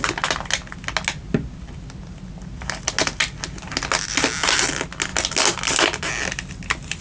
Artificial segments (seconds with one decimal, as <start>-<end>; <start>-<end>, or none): none